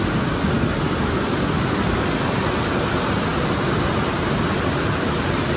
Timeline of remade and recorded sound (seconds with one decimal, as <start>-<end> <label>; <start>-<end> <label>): 0.0-5.6 recorded